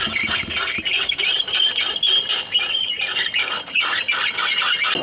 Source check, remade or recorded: recorded